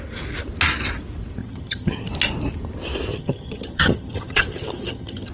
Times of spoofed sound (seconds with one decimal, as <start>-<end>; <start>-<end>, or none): 1.4-2.1; 3.1-5.3